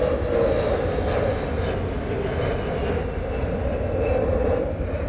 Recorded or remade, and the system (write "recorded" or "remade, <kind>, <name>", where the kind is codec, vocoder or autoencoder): recorded